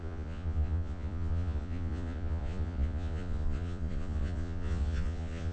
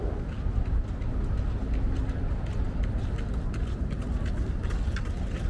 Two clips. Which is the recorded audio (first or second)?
second